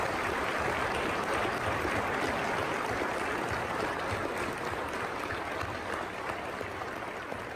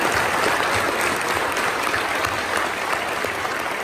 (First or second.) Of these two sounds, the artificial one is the second